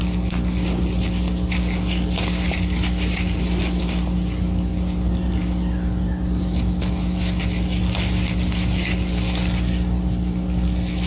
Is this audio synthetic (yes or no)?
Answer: no